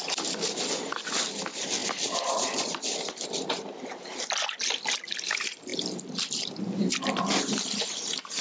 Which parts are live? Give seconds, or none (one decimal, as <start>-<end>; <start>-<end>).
0.0-1.8; 2.8-8.4